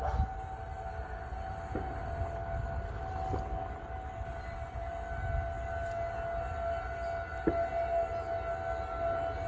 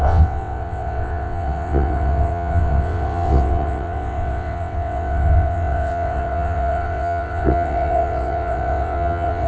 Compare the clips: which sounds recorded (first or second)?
first